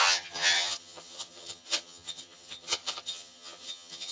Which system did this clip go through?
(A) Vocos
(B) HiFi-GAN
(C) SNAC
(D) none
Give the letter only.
B